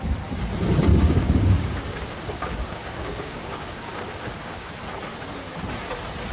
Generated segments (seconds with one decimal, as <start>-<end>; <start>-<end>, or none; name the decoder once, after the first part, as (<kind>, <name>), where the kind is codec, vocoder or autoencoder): 0.9-4.7 (codec, DAC)